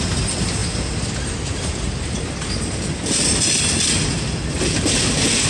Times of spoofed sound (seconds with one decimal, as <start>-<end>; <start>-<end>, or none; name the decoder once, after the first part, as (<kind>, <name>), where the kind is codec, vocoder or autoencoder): none